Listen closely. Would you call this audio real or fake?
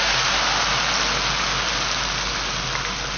real